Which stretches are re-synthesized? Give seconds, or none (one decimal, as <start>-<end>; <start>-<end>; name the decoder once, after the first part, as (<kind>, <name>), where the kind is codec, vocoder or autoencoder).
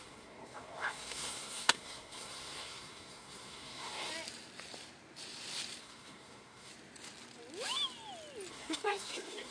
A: 0.0-4.1 (codec, SNAC); 5.8-6.7; 8.5-9.5